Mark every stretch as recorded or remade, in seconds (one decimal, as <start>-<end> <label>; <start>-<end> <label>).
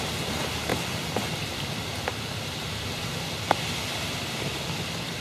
0.0-0.7 recorded; 0.7-3.0 remade; 3.0-5.2 recorded